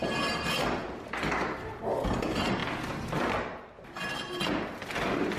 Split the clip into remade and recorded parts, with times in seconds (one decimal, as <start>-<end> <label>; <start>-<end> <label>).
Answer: 0.0-5.4 recorded